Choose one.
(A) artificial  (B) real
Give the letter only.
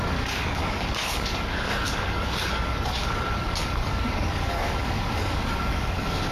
A